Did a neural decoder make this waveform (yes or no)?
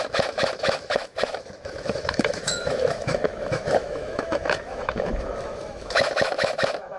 yes